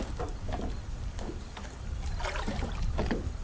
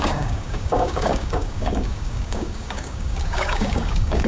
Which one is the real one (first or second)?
first